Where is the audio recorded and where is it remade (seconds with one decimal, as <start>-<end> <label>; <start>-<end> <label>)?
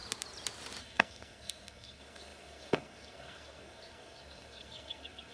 0.0-0.8 recorded; 0.8-5.3 remade